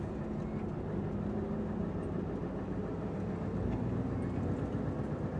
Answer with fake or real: real